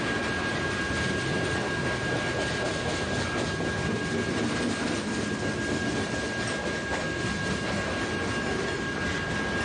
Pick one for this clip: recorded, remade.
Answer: recorded